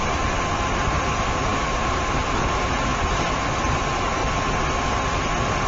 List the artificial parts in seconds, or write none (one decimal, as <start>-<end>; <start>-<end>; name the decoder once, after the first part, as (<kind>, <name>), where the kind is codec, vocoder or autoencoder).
0.0-4.2 (vocoder, BigVGAN v2)